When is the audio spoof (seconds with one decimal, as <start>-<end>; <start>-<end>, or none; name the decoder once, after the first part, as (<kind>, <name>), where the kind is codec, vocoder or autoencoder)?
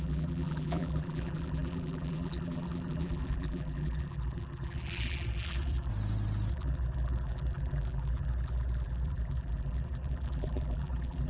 0.0-5.9 (vocoder, BigVGAN v2); 6.5-11.3